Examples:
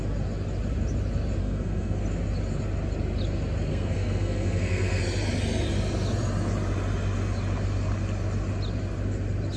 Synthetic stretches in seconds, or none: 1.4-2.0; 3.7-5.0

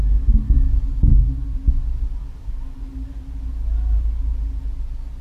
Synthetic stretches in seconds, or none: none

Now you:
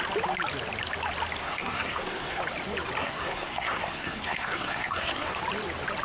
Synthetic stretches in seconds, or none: 1.4-2.4; 3.0-5.4

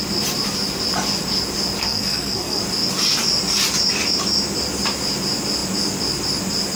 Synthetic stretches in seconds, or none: 1.8-2.6

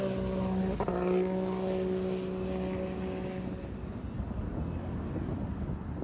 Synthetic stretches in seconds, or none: none